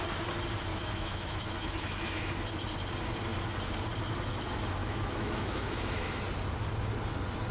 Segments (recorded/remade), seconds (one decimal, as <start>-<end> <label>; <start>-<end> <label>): 0.0-0.7 recorded; 0.7-2.3 remade; 2.3-4.8 recorded; 4.8-6.2 remade; 6.2-7.5 recorded